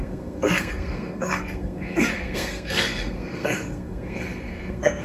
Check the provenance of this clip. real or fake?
fake